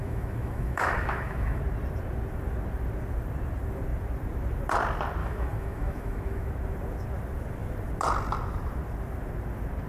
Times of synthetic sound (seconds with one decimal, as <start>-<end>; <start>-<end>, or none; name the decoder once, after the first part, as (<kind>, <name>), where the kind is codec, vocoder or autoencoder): 0.0-1.6 (autoencoder, DAC-VAE); 5.2-6.5